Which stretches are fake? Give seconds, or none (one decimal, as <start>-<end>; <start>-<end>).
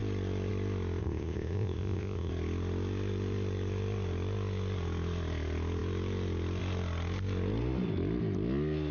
1.0-2.3